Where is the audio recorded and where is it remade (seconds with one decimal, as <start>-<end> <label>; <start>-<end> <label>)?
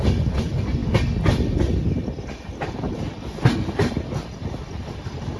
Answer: 0.0-5.4 recorded